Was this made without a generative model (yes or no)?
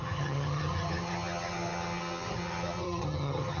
no